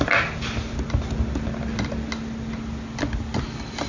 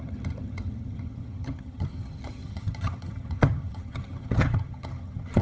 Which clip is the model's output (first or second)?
second